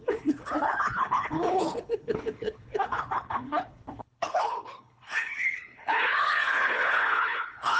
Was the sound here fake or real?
fake